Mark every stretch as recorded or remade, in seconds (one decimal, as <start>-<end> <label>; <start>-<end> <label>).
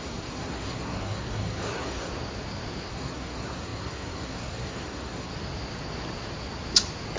0.0-2.1 remade; 2.1-2.9 recorded; 2.9-5.3 remade; 5.3-7.2 recorded